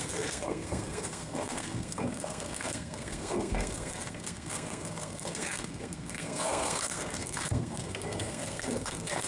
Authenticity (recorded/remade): remade